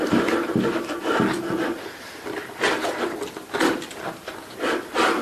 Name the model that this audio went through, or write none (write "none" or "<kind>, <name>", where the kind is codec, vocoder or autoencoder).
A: none